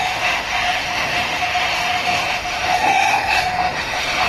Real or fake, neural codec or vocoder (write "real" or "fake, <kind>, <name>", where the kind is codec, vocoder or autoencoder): fake, autoencoder, DAC-VAE